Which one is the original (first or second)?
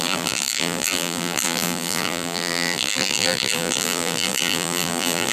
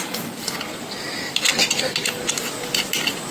second